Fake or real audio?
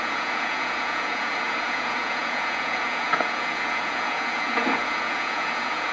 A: fake